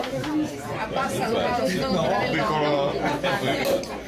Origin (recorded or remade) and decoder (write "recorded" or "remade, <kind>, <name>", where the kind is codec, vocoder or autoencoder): recorded